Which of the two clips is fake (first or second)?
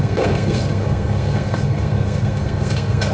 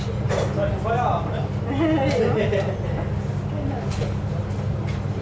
first